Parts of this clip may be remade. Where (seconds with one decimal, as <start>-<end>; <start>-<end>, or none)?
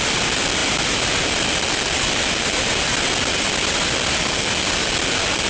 none